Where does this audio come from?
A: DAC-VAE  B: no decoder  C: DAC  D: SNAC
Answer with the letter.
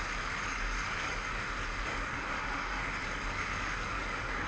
C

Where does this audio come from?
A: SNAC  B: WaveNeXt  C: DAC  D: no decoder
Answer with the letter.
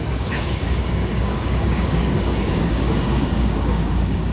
C